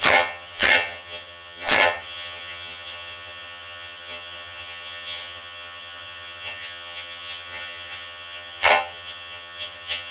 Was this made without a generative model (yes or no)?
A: no